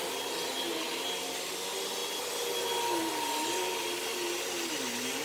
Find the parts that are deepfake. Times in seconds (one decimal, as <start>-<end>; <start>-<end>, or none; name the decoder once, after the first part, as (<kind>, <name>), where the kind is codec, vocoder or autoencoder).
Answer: none